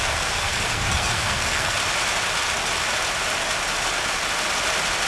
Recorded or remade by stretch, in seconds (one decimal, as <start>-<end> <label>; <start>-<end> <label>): 0.0-1.8 remade; 1.8-5.1 recorded

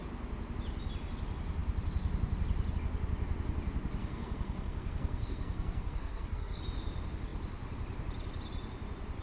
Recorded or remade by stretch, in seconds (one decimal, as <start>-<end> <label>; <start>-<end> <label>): 0.0-4.0 recorded; 4.0-6.6 remade; 6.6-9.2 recorded

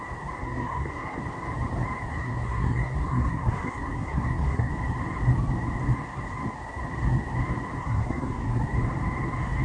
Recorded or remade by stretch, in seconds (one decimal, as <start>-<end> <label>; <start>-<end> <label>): 0.0-0.4 recorded; 0.4-1.2 remade; 1.2-2.1 recorded; 2.1-4.7 remade; 4.7-7.8 recorded; 7.8-8.6 remade; 8.6-9.6 recorded